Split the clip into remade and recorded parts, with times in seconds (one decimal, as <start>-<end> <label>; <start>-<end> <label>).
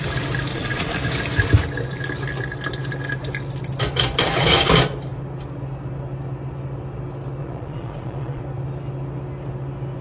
0.0-0.5 recorded; 0.5-1.0 remade; 1.0-7.4 recorded; 7.4-8.4 remade; 8.4-10.0 recorded